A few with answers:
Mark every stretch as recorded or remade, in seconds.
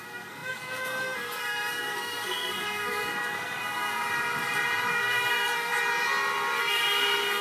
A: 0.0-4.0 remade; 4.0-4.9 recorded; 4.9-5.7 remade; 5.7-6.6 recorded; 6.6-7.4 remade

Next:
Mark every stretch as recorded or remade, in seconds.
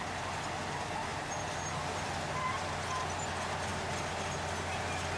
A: 0.0-5.2 recorded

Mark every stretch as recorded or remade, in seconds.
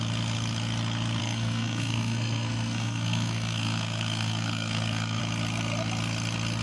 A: 0.0-1.2 recorded; 1.2-5.2 remade; 5.2-6.6 recorded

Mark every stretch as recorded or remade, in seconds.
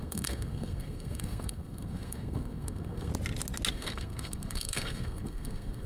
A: 0.0-3.1 remade; 3.1-3.7 recorded; 3.7-5.9 remade